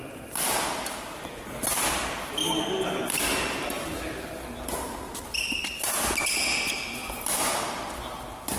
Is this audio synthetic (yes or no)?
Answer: no